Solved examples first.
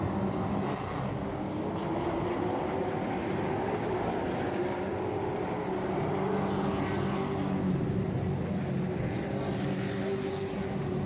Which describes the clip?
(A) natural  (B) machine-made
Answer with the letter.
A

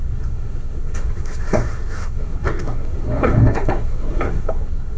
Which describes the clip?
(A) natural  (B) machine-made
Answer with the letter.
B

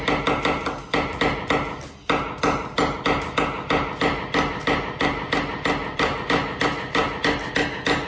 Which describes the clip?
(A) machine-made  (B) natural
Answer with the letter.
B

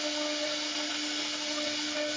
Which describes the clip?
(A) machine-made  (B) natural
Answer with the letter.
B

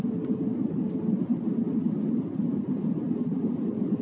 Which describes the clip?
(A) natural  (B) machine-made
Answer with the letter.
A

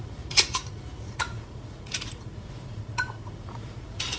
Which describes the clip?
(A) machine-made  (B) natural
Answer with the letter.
A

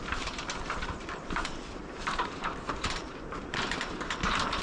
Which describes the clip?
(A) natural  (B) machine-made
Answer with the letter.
B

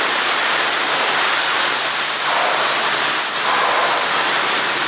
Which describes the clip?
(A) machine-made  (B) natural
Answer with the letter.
A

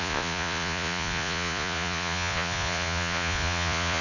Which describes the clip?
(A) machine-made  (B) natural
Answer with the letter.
A